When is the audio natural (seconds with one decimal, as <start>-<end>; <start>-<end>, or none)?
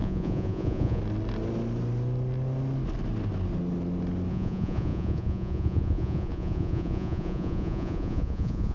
1.0-4.3